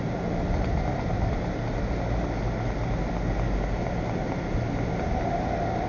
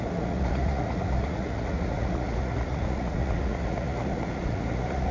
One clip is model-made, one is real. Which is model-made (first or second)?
second